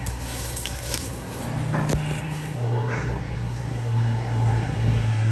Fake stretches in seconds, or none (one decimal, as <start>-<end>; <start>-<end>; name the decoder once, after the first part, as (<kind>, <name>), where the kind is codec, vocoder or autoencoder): 0.0-1.4 (codec, SNAC); 2.2-5.3